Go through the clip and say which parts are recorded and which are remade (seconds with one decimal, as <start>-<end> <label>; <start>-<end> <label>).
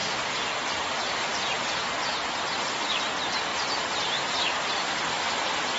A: 0.0-5.8 recorded